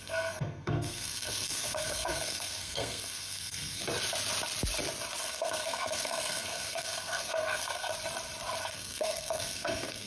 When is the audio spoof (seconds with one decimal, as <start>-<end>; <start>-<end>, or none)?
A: 0.0-3.8; 5.2-7.9; 8.6-10.1